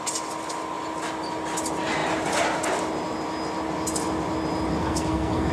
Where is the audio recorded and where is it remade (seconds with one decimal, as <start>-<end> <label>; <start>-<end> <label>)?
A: 0.0-4.7 recorded; 4.7-5.5 remade